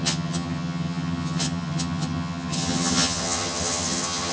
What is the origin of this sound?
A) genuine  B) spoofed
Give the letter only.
B